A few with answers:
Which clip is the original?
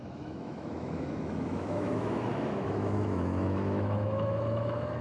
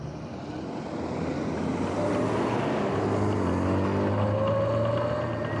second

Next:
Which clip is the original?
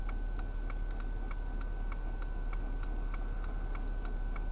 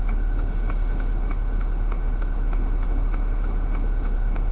first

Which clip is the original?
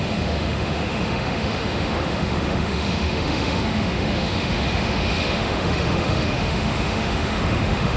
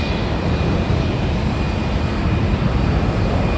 second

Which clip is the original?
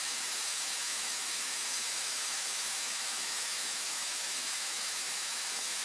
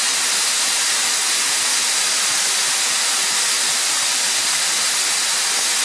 second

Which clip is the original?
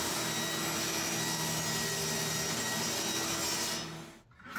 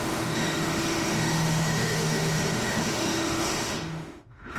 first